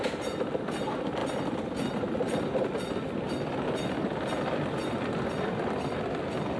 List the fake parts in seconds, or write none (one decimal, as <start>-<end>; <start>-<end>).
none